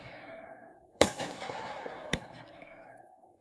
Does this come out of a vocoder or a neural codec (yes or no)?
yes